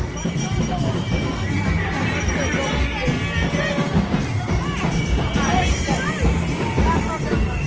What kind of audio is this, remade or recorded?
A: recorded